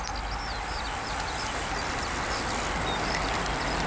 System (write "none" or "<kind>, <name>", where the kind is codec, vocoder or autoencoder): none